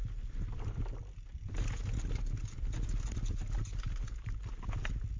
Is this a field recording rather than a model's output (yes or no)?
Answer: yes